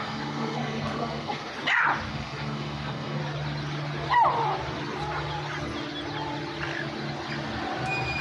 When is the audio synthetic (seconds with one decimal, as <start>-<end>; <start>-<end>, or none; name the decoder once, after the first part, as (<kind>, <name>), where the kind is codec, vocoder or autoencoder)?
0.0-1.5 (codec, SNAC); 2.1-3.2